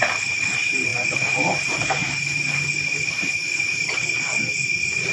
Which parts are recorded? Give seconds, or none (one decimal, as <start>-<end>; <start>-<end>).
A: none